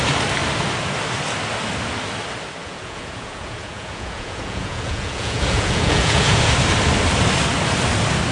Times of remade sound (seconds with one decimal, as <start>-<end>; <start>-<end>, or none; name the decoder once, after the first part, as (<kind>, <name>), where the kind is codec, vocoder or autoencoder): 2.6-6.5 (vocoder, Vocos)